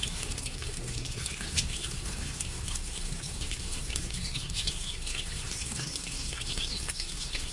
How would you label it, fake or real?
fake